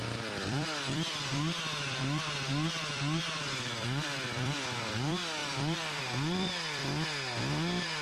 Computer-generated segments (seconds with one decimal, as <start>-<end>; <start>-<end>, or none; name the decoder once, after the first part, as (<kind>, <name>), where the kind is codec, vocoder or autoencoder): 0.0-6.8 (vocoder, BigVGAN v2); 7.4-8.0